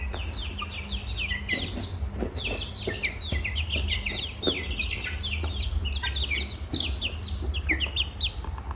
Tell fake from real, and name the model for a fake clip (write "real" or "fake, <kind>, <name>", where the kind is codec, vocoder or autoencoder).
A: real